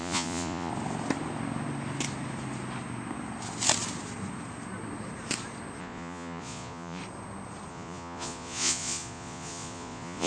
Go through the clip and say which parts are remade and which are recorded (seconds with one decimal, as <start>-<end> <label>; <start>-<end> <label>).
0.0-0.7 remade; 0.7-5.8 recorded; 5.8-7.0 remade; 7.0-7.7 recorded; 7.7-10.3 remade